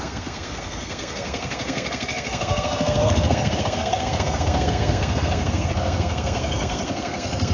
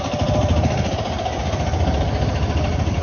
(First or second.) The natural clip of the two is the second